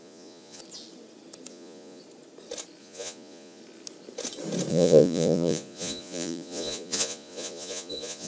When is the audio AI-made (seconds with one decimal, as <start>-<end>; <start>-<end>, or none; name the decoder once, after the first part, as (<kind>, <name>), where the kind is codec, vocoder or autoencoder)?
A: 0.0-0.6 (vocoder, Vocos); 1.5-2.0; 2.8-3.6; 4.7-8.3